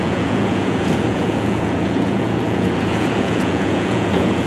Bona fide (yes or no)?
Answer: no